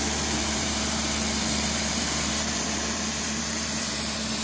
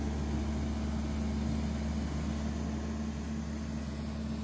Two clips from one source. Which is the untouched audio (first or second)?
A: second